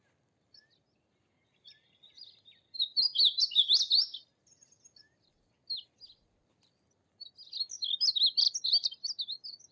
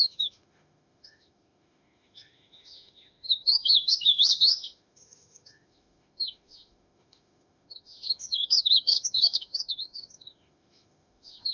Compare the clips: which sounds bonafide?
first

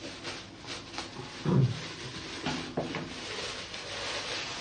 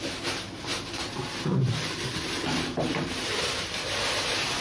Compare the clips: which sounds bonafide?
first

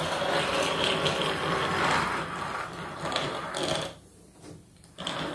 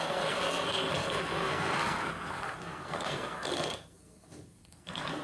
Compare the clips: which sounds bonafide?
first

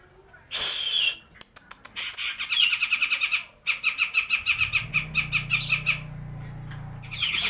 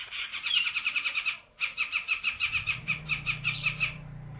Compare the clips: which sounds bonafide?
first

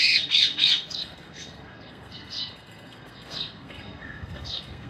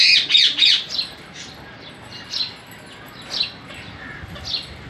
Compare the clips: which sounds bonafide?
second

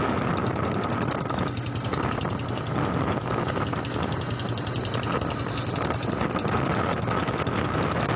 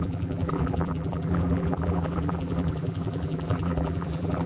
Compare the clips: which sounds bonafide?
first